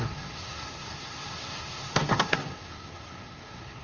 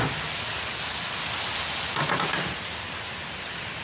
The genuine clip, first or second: second